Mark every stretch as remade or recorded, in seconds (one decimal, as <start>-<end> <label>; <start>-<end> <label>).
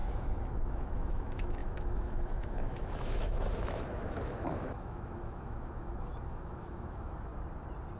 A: 0.0-7.3 remade; 7.3-8.0 recorded